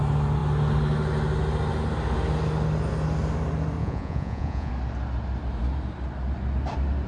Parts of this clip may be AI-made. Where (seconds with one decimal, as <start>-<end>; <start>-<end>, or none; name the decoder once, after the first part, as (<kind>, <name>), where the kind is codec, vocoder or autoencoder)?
3.8-4.7 (vocoder, Vocos)